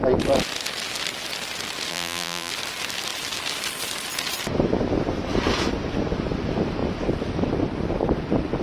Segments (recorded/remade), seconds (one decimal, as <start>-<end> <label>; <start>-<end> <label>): 0.0-1.9 recorded; 1.9-2.5 remade; 2.5-8.6 recorded